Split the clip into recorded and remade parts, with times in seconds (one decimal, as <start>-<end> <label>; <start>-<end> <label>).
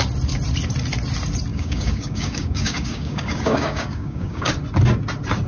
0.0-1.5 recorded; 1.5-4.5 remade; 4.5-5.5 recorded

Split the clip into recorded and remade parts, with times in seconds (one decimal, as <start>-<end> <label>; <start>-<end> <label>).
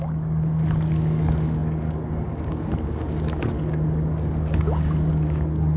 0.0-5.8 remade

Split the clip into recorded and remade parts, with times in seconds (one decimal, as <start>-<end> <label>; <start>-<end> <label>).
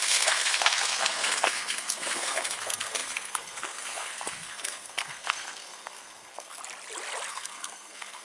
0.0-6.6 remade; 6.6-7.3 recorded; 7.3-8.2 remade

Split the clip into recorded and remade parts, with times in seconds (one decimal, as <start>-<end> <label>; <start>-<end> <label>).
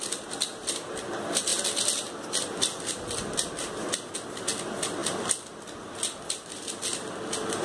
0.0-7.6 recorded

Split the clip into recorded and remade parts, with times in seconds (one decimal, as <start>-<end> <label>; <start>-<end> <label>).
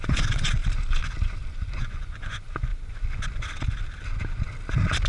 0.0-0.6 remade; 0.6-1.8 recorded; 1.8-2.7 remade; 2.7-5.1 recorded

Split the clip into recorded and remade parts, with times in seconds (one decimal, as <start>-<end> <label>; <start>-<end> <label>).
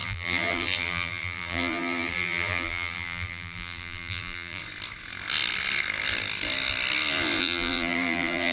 0.0-4.6 remade; 4.6-7.4 recorded; 7.4-8.5 remade